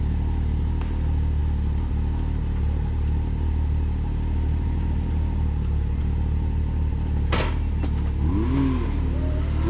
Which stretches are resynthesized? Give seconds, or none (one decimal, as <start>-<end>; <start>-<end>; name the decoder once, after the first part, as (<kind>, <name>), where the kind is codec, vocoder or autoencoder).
none